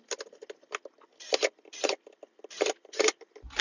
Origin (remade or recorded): recorded